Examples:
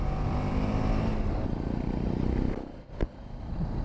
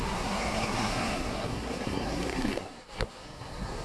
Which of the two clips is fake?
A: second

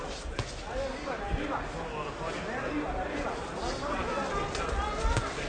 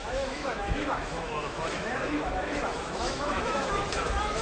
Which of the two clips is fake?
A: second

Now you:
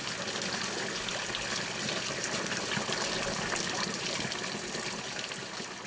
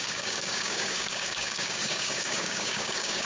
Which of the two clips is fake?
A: second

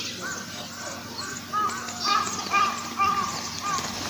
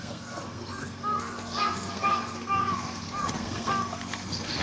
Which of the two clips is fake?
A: second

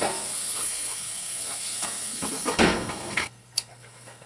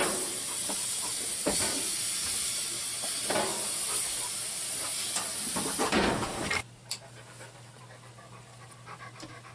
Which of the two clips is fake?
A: first